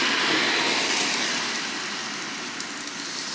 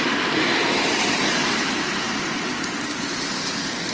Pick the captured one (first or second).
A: first